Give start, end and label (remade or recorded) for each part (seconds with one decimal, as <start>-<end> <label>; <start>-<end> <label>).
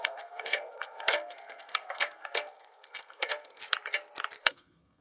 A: 0.0-3.6 remade; 3.6-4.4 recorded; 4.4-5.0 remade